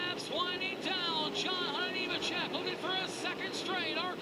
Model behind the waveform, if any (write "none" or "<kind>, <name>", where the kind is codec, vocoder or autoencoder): none